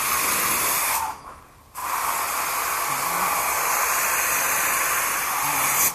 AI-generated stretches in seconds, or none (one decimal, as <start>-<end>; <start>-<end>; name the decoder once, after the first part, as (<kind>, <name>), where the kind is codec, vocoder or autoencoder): 0.8-1.4 (autoencoder, DAC-VAE)